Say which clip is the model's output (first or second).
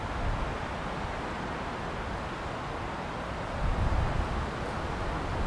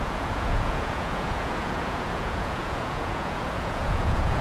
second